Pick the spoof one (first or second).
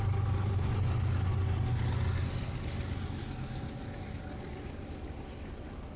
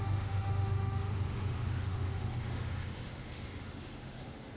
second